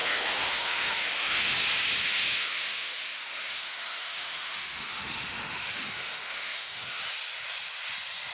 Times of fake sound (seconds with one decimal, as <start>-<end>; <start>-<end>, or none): 0.0-1.5; 2.0-7.0

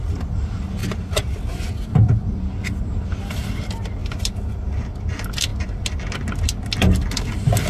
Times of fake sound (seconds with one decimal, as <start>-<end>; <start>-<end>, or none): 0.0-0.8; 2.3-4.0; 5.1-5.5; 7.2-7.7